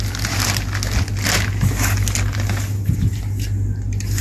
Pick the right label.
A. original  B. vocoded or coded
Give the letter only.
A